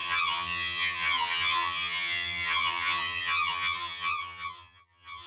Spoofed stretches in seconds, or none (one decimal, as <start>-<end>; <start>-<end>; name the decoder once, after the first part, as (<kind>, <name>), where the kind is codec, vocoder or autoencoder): 0.0-5.3 (vocoder, HiFi-GAN)